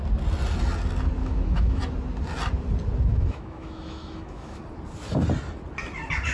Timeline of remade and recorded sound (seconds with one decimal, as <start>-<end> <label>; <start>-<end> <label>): 0.0-1.2 recorded; 1.2-1.8 remade; 1.8-3.1 recorded; 3.1-4.6 remade; 4.6-6.3 recorded